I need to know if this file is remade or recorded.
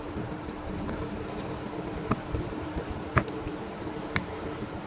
remade